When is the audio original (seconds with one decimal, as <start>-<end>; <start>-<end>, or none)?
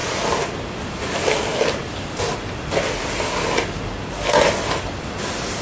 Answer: 0.0-5.6